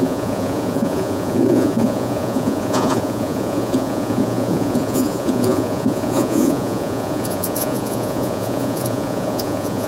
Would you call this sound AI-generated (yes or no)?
yes